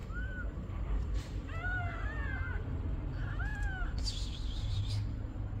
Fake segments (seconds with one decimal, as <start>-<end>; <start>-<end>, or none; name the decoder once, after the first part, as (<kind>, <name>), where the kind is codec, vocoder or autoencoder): 0.0-2.8 (vocoder, BigVGAN v2)